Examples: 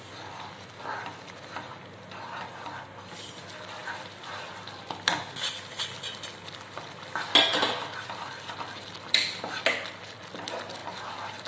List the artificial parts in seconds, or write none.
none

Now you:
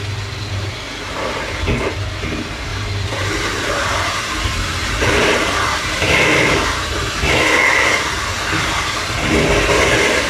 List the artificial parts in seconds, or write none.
2.7-7.7 (vocoder, BigVGAN v2)

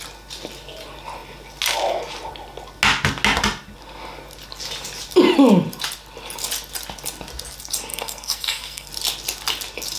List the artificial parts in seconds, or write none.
7.9-8.9 (codec, SNAC)

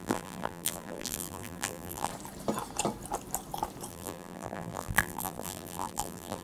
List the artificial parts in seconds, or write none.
0.0-2.1 (vocoder, BigVGAN v2); 3.9-6.4